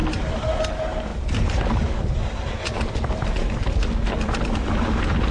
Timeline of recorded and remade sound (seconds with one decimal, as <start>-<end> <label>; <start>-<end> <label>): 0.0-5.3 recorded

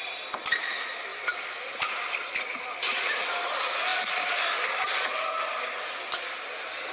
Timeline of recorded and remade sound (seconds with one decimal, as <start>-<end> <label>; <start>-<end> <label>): 0.0-6.9 recorded

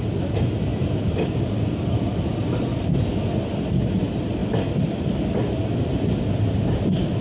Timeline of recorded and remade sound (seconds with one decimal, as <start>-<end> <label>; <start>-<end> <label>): 0.0-7.2 recorded

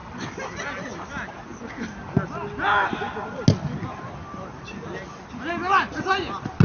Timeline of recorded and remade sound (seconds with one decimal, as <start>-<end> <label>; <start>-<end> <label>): 0.0-6.6 recorded

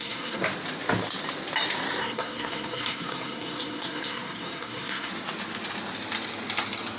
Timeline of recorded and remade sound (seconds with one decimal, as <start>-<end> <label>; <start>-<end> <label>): 0.0-0.4 remade; 0.4-2.0 recorded; 2.0-5.1 remade; 5.1-7.0 recorded

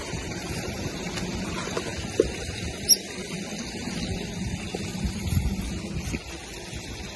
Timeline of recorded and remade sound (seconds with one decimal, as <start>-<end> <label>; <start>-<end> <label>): 0.0-0.4 recorded; 0.4-1.0 remade; 1.0-4.9 recorded; 4.9-5.7 remade; 5.7-7.2 recorded

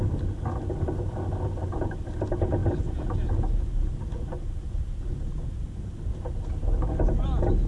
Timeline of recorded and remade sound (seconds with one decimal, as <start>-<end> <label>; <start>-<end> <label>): 0.0-7.7 recorded

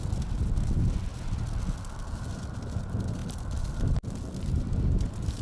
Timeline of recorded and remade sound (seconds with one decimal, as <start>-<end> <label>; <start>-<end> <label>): 0.0-5.4 recorded